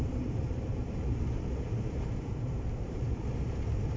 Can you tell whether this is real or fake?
fake